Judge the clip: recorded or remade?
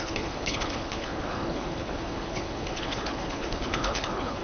remade